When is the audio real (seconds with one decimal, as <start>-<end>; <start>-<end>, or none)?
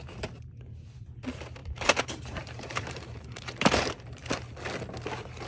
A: 0.0-1.6; 4.3-5.5